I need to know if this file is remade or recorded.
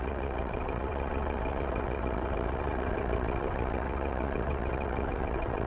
remade